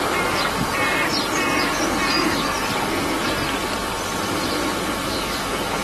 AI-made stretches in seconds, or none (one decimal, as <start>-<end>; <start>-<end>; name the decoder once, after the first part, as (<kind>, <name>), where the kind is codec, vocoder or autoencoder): 5.0-5.8 (codec, DAC)